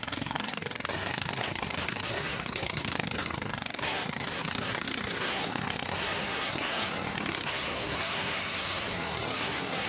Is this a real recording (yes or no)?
no